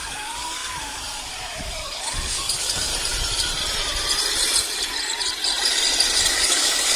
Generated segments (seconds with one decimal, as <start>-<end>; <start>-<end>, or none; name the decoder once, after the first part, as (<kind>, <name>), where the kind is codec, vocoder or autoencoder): 0.0-2.9 (codec, DAC); 6.3-7.0